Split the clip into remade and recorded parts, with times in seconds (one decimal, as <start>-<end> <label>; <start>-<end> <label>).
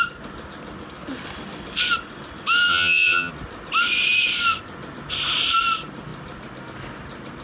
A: 0.0-2.7 recorded; 2.7-3.3 remade; 3.3-7.4 recorded